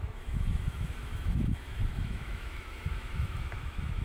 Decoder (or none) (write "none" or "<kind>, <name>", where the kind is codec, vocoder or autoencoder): autoencoder, DAC-VAE